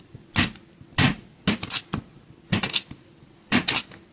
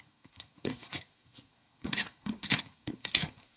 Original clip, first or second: first